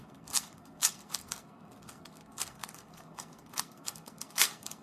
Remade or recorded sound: remade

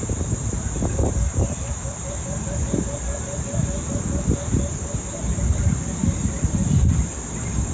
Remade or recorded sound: recorded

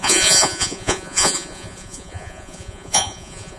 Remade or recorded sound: remade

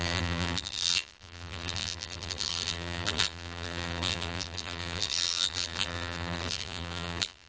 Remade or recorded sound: remade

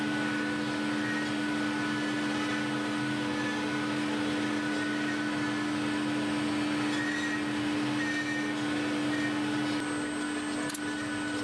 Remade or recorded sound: recorded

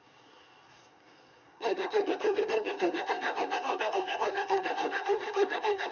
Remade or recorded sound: remade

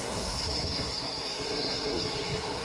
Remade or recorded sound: remade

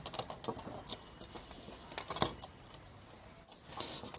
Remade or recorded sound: recorded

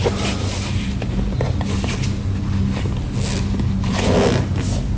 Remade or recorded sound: recorded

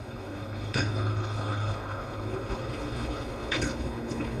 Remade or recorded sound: remade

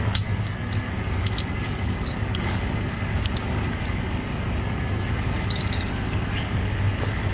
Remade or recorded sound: remade